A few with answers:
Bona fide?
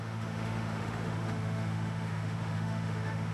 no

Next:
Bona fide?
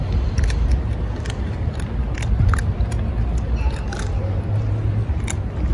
yes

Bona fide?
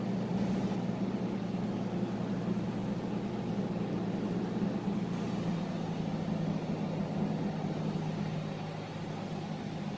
yes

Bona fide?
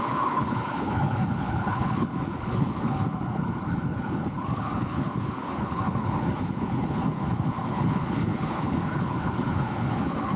no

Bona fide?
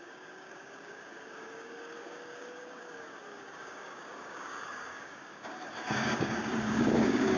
no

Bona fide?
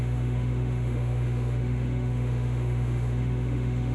no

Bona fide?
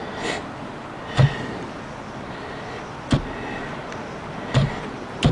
yes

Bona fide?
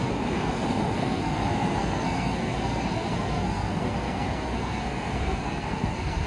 no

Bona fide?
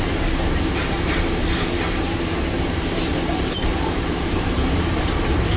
no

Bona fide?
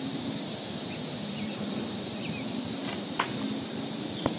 yes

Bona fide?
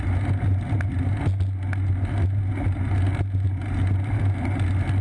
yes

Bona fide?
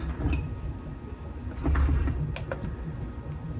yes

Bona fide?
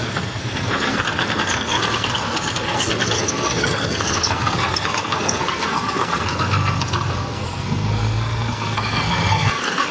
no